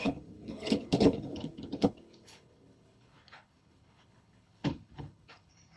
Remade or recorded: remade